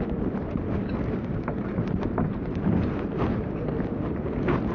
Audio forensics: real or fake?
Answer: real